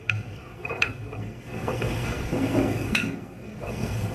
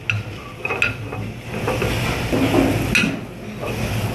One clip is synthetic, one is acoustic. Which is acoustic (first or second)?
second